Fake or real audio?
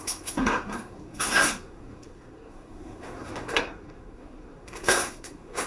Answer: fake